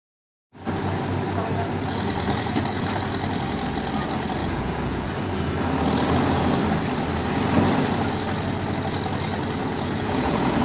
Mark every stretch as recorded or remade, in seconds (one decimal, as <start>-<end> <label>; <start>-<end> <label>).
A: 0.0-4.4 recorded; 4.4-5.1 remade; 5.1-9.6 recorded; 9.6-10.6 remade